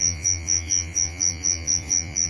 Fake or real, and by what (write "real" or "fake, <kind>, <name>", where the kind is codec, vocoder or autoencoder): fake, vocoder, Vocos